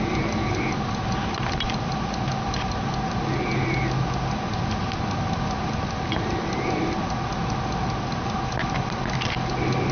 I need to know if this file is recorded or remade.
recorded